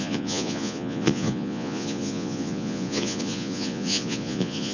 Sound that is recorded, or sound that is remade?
remade